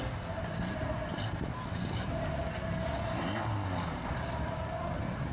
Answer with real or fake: real